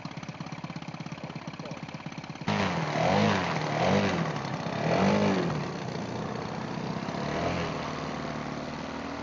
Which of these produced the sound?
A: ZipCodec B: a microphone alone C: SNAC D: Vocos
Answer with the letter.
B